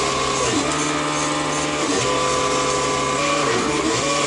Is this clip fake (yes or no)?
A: no